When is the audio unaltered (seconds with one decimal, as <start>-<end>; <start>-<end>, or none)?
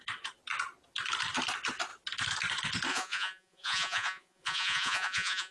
0.0-2.9